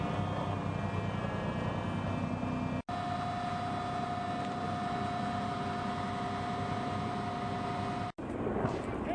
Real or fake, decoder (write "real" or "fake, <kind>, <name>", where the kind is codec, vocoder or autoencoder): real